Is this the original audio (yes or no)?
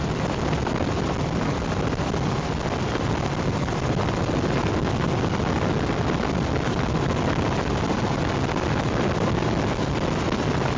yes